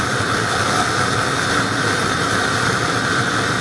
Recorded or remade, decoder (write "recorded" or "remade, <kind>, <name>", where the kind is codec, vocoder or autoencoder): recorded